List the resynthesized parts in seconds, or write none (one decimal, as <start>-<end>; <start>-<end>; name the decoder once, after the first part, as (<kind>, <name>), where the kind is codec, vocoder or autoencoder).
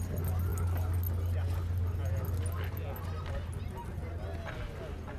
none